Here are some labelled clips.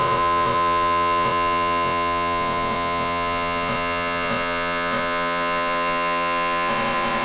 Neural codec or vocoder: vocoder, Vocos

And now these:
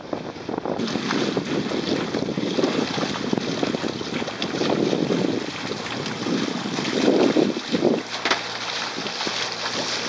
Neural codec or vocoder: none